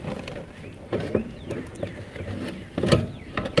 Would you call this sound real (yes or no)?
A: yes